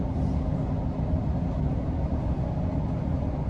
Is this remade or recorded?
recorded